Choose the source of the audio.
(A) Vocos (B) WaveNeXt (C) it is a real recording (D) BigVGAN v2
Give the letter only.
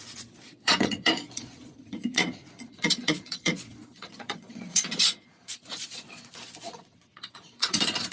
A